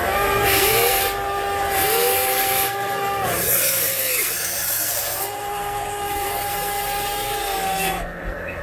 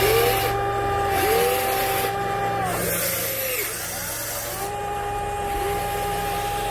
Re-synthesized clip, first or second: first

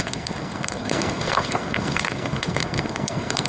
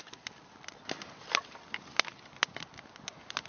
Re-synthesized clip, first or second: first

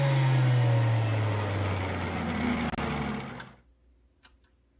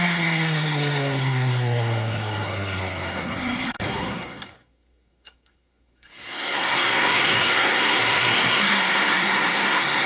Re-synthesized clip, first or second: second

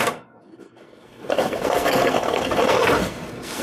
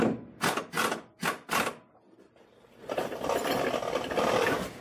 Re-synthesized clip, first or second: first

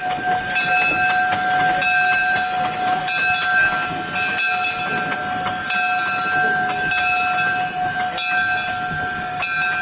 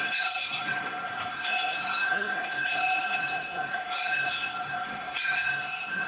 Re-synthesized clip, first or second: second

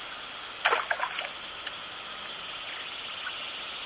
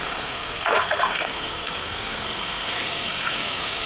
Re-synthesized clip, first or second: second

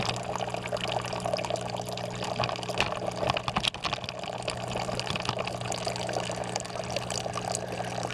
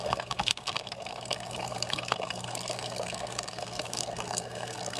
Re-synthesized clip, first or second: second